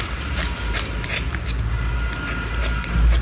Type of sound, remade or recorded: recorded